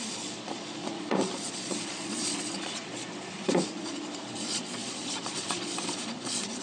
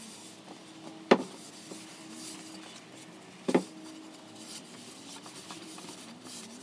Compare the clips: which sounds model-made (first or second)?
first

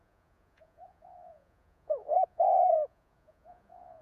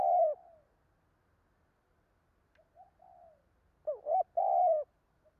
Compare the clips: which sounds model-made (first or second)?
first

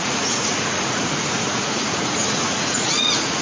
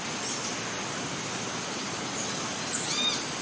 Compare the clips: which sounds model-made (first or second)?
first